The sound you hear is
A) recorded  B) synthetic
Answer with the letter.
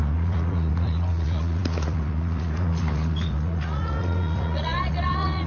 B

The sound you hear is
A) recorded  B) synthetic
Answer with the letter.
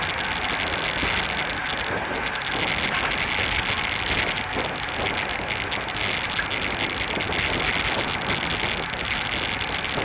A